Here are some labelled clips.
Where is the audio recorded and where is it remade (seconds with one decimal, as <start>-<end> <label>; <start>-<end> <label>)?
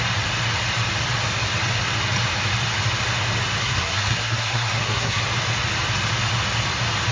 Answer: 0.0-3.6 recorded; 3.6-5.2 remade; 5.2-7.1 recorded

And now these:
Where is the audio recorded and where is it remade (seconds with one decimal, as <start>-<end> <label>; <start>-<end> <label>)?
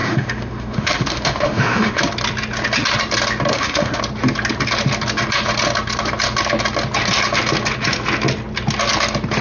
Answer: 0.0-2.0 remade; 2.0-3.5 recorded; 3.5-4.0 remade; 4.0-9.4 recorded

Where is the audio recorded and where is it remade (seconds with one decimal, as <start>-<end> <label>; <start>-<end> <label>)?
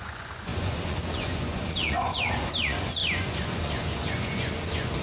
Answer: 0.0-5.0 remade